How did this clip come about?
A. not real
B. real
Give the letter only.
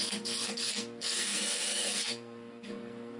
A